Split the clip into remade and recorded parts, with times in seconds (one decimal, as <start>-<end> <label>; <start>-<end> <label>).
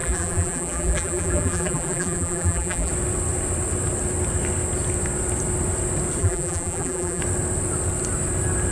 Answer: 0.0-2.9 remade; 2.9-6.2 recorded; 6.2-7.2 remade; 7.2-8.7 recorded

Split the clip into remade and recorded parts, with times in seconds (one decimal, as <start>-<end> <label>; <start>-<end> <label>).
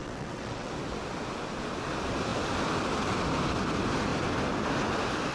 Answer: 0.0-0.7 remade; 0.7-5.3 recorded